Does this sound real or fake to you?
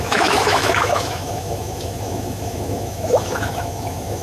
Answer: fake